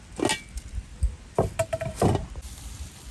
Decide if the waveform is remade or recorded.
recorded